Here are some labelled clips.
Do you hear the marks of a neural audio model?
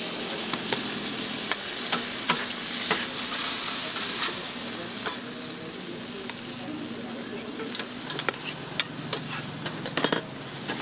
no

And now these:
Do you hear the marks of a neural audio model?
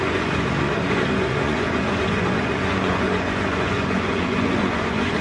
yes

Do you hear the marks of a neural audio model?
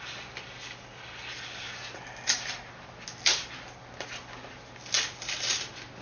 no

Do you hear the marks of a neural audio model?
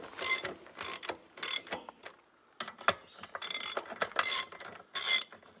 no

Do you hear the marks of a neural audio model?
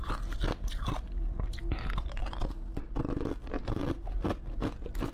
no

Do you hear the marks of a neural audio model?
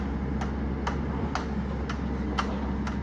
no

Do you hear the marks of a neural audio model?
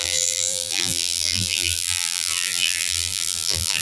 yes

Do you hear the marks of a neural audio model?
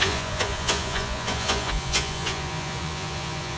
yes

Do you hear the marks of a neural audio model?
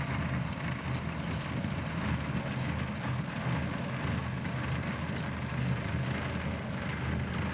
no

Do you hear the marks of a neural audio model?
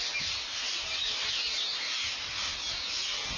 no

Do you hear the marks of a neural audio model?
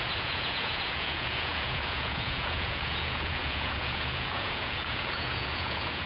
yes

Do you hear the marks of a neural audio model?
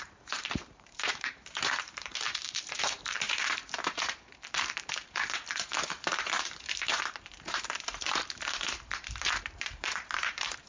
yes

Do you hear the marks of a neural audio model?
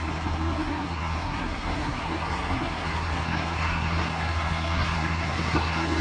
yes